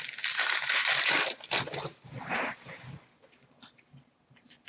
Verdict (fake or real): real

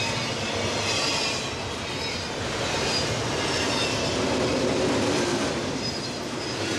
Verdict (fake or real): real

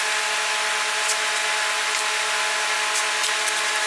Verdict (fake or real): real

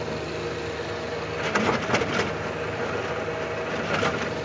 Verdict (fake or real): real